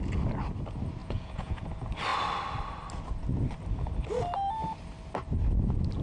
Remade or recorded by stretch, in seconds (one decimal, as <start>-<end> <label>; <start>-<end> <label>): 0.0-1.0 recorded; 1.0-1.6 remade; 1.6-6.0 recorded